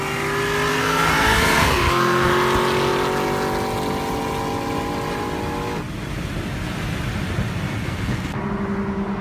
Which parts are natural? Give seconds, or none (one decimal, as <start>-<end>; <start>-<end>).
0.0-0.7; 2.3-7.8; 8.4-9.2